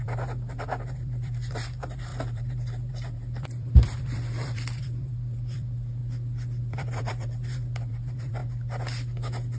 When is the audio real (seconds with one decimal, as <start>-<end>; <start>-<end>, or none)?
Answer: 6.0-6.6; 8.4-9.6